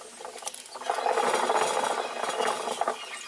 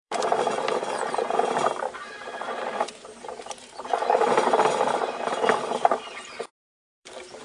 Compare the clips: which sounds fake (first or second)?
second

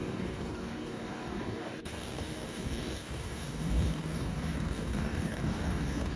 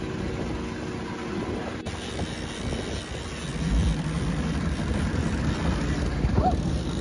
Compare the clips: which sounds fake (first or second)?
first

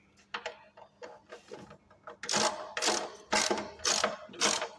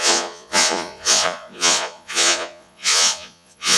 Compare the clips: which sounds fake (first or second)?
second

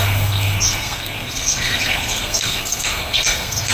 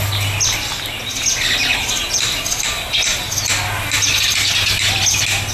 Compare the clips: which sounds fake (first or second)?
first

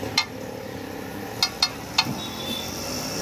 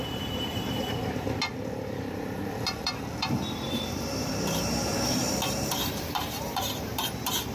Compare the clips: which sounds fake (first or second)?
second